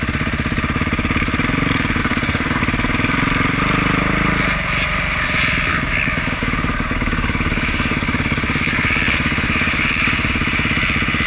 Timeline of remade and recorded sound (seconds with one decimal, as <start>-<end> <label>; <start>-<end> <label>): 0.0-2.0 recorded; 2.0-2.6 remade; 2.6-5.7 recorded; 5.7-10.3 remade; 10.3-11.3 recorded